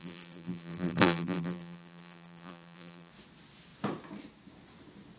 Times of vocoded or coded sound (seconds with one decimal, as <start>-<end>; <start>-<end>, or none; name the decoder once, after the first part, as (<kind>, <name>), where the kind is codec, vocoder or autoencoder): 0.0-3.1 (vocoder, BigVGAN v2)